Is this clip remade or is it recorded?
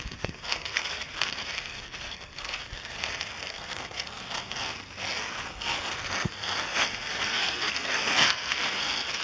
remade